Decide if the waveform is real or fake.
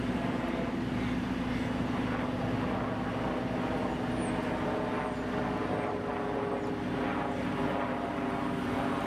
real